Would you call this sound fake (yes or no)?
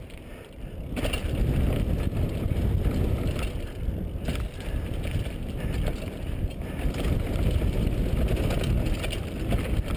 no